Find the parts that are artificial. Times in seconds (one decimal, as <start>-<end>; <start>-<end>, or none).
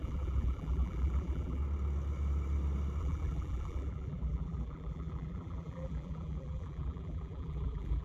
0.0-1.6; 3.0-8.0